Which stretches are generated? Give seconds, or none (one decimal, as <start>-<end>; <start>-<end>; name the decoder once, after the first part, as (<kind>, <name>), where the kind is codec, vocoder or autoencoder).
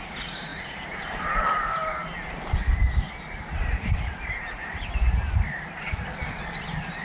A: 0.0-1.8 (vocoder, BigVGAN v2); 5.5-7.0